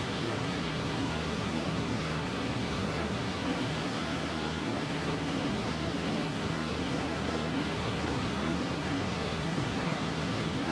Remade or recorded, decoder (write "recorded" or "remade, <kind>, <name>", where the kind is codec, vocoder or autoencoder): remade, codec, SNAC